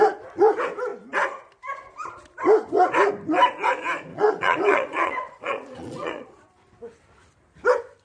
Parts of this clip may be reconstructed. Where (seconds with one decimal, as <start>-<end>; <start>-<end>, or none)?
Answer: 4.1-6.4